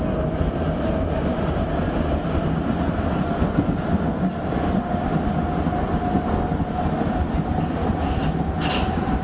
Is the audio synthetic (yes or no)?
no